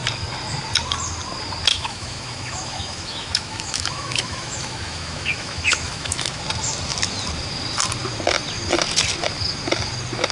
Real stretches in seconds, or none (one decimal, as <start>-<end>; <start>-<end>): 0.0-1.7; 6.4-10.3